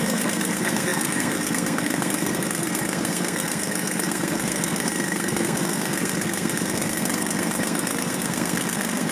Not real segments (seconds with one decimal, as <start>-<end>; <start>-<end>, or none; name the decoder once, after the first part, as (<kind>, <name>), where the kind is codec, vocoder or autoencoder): 0.0-9.1 (codec, SNAC)